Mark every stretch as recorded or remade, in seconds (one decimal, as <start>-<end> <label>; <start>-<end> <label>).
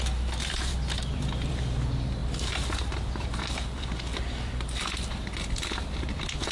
0.0-6.5 remade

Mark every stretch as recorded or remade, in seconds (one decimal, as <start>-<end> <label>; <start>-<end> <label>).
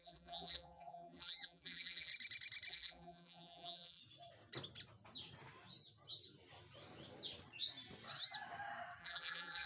0.0-2.1 remade; 2.1-2.7 recorded; 2.7-4.0 remade; 4.0-9.0 recorded; 9.0-9.7 remade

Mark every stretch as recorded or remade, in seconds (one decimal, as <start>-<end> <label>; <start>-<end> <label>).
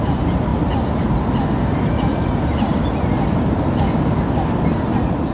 0.0-5.3 recorded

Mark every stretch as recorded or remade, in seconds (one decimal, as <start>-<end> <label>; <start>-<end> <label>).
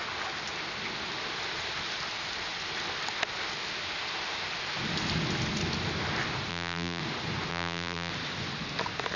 0.0-6.5 recorded; 6.5-7.0 remade; 7.0-7.5 recorded; 7.5-8.1 remade; 8.1-9.2 recorded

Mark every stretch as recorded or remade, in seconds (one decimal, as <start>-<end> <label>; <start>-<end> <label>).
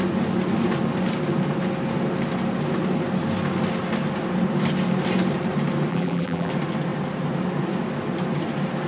0.0-5.9 recorded; 5.9-6.5 remade; 6.5-8.9 recorded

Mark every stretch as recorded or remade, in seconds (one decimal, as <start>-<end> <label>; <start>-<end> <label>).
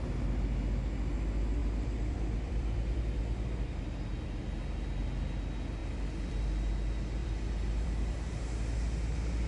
0.0-1.6 recorded; 1.6-3.0 remade; 3.0-7.2 recorded; 7.2-8.3 remade; 8.3-9.5 recorded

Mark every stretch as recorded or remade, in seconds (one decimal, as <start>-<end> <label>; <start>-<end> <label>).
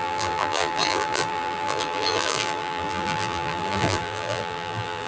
0.0-5.1 remade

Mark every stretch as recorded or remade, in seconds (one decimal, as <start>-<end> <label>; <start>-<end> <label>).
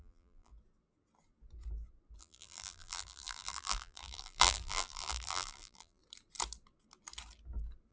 0.0-0.5 remade; 0.5-2.2 recorded; 2.2-6.0 remade; 6.0-7.9 recorded